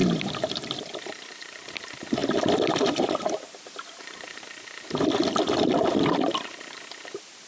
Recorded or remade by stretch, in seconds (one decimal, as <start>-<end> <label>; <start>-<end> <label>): 0.0-7.5 remade

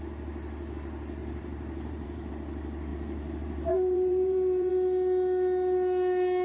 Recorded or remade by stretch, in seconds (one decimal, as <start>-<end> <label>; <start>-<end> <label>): 0.0-1.2 recorded; 1.2-2.3 remade; 2.3-2.9 recorded; 2.9-4.7 remade; 4.7-6.4 recorded

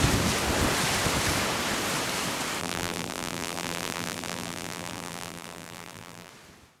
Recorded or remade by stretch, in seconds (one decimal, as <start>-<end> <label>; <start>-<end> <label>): 0.0-2.6 recorded; 2.6-6.3 remade; 6.3-6.8 recorded

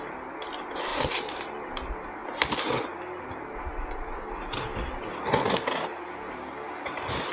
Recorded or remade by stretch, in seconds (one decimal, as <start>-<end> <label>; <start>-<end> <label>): 0.0-0.9 recorded; 0.9-1.5 remade; 1.5-7.3 recorded

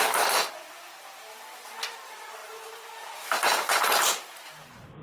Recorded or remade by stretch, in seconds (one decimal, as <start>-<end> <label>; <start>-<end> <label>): 0.0-2.4 recorded; 2.4-4.4 remade; 4.4-5.0 recorded

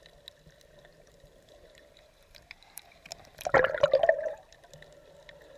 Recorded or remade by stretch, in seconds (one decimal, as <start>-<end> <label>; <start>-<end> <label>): 0.0-0.9 recorded; 0.9-3.9 remade; 3.9-5.6 recorded

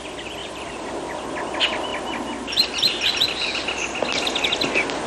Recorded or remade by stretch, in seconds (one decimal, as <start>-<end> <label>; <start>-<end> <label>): 0.0-0.4 recorded; 0.4-1.1 remade; 1.1-5.1 recorded